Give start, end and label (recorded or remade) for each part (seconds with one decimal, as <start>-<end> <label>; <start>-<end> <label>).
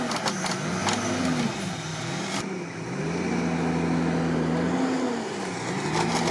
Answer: 0.0-6.3 recorded